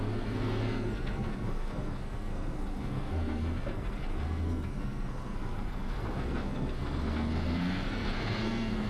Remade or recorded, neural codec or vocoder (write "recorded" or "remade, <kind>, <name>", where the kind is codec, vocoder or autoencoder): remade, codec, SNAC